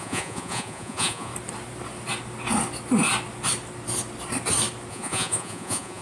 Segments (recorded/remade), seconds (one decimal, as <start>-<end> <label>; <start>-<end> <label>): 0.0-1.3 remade; 1.3-4.9 recorded; 4.9-6.0 remade